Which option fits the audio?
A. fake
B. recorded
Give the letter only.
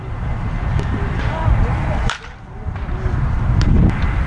A